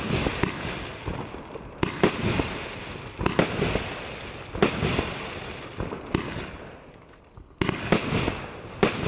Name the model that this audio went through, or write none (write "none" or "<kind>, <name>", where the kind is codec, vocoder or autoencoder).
none